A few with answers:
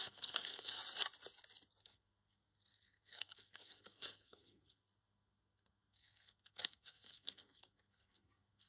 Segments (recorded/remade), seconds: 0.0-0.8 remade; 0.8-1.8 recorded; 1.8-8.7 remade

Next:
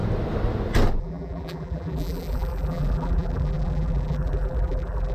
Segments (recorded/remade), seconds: 0.0-1.0 recorded; 1.0-5.1 remade